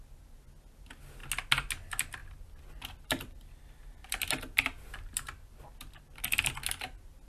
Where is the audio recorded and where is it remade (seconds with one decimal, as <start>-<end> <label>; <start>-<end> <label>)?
0.0-2.2 recorded; 2.2-6.2 remade; 6.2-7.3 recorded